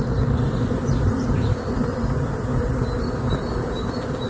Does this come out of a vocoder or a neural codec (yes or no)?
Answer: no